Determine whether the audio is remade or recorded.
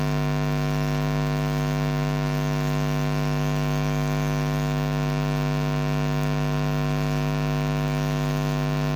recorded